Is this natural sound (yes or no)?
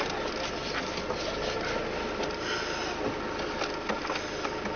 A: yes